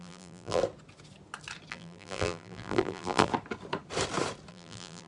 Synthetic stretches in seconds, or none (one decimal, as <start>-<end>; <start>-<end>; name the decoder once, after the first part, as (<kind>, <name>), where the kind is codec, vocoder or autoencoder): 0.0-0.6 (vocoder, BigVGAN v2); 1.7-3.3; 4.5-5.1